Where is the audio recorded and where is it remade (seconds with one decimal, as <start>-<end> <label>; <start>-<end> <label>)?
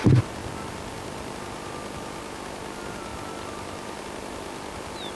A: 0.0-0.4 recorded; 0.4-1.3 remade; 1.3-3.1 recorded; 3.1-4.0 remade; 4.0-5.1 recorded